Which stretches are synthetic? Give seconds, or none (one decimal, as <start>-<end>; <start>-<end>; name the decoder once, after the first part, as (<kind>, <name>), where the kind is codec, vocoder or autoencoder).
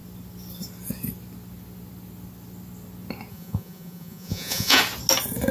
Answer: 3.3-4.8 (vocoder, Vocos)